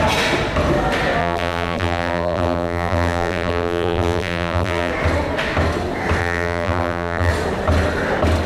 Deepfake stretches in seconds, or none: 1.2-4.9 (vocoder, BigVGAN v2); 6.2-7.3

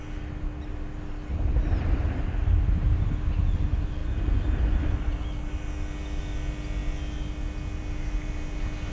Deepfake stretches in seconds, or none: none

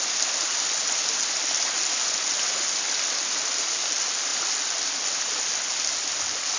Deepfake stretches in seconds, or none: none